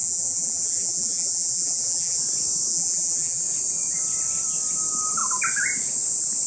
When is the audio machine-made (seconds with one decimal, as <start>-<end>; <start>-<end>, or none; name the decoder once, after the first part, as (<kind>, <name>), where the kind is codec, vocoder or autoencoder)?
0.0-2.2 (vocoder, BigVGAN v2); 2.7-3.4